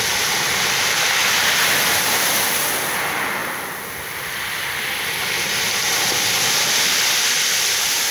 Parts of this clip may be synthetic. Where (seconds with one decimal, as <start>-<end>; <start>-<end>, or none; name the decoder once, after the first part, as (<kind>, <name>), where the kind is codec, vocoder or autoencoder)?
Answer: none